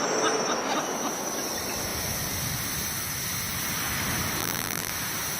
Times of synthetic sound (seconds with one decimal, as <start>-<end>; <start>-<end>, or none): 4.4-4.9